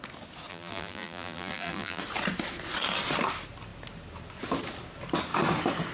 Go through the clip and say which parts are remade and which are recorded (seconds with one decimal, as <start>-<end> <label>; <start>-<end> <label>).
0.0-0.5 recorded; 0.5-2.0 remade; 2.0-5.9 recorded